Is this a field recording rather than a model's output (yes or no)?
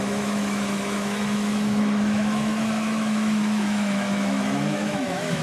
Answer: no